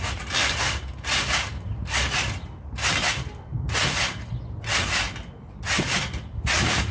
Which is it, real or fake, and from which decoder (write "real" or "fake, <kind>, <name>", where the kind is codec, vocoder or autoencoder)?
real